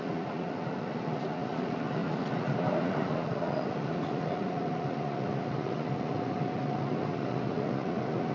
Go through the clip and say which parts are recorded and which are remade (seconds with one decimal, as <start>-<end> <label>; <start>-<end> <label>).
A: 0.0-8.3 remade